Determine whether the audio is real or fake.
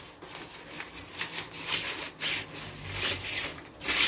real